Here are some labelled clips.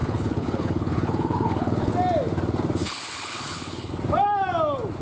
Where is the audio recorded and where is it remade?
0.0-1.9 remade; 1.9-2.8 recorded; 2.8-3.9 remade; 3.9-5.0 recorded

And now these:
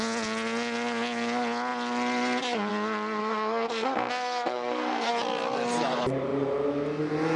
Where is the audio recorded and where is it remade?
0.0-3.2 recorded; 3.2-5.1 remade; 5.1-7.4 recorded